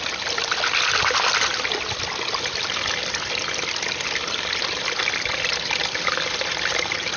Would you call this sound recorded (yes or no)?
yes